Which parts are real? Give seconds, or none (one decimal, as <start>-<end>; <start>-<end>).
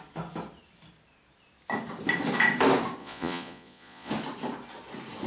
0.0-3.0; 4.1-5.3